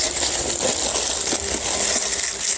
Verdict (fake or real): real